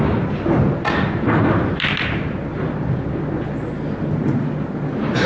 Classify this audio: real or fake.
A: real